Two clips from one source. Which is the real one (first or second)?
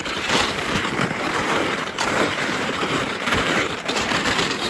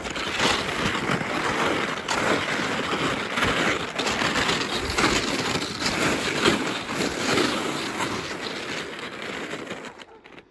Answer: second